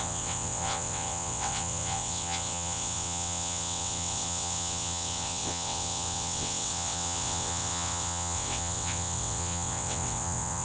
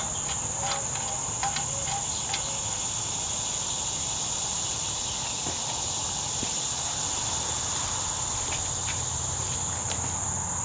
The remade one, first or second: first